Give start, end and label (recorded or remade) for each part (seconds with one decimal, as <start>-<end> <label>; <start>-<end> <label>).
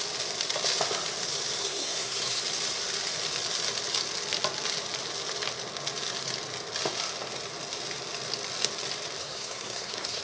0.0-1.6 recorded; 1.6-2.4 remade; 2.4-9.2 recorded; 9.2-10.2 remade